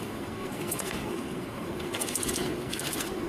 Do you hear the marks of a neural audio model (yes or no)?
yes